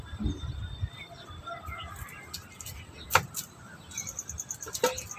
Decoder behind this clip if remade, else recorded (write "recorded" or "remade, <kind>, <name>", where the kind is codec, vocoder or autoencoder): recorded